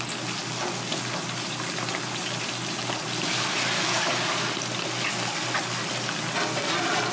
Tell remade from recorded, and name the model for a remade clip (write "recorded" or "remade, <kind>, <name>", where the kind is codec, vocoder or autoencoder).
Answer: recorded